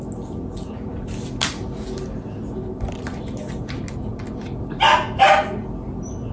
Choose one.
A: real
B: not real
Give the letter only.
A